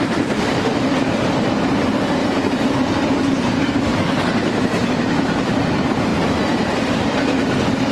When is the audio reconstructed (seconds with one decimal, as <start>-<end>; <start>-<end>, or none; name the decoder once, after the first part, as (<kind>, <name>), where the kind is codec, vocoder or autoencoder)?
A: 0.0-7.9 (vocoder, BigVGAN v2)